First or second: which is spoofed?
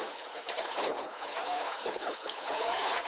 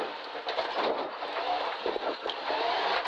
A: first